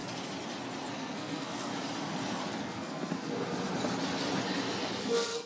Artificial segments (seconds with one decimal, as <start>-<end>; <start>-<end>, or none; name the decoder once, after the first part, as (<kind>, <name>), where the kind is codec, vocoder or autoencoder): 0.9-1.7 (codec, SNAC); 2.6-3.3; 5.0-5.5